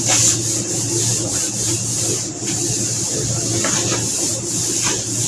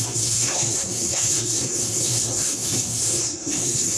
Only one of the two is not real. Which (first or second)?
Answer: second